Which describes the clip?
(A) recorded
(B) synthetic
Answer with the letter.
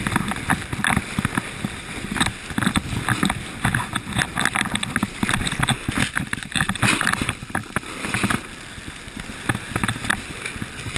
A